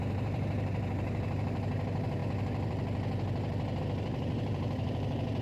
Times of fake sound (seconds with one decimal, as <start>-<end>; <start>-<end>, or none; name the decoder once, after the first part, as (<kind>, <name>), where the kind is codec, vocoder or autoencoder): 0.0-2.2 (vocoder, BigVGAN v2); 3.8-5.4